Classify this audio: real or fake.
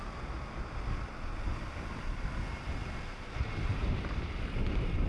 real